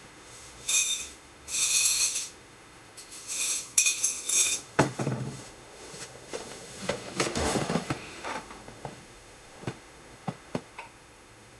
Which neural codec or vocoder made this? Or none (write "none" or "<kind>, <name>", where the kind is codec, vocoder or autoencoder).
autoencoder, DAC-VAE